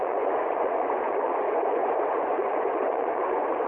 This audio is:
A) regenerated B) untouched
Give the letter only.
A